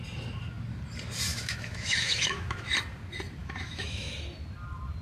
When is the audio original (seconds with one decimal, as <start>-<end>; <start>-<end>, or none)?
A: 0.0-1.3; 2.7-3.4; 4.1-5.0